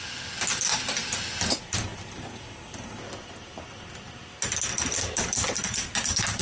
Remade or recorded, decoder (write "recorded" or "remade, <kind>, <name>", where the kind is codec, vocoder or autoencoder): recorded